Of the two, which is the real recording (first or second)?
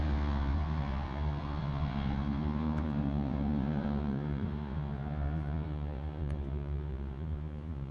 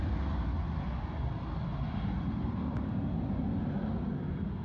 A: second